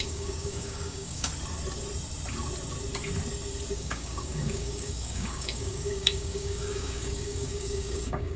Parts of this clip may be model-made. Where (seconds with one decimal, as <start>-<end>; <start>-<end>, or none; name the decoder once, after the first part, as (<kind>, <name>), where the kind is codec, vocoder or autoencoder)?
0.0-1.3 (codec, DAC); 3.7-8.4